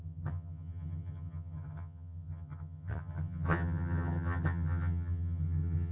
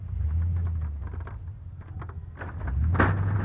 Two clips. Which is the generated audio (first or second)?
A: first